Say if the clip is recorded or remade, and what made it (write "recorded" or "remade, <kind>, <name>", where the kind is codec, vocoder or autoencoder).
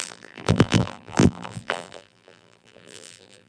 remade, vocoder, BigVGAN v2